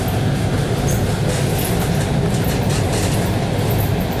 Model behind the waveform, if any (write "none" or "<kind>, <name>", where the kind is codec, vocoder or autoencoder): none